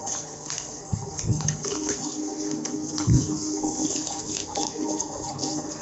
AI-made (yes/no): yes